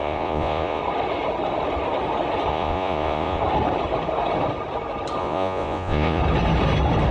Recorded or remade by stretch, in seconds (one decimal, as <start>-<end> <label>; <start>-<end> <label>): 0.0-0.8 remade; 0.8-2.5 recorded; 2.5-3.4 remade; 3.4-5.2 recorded; 5.2-6.2 remade; 6.2-7.1 recorded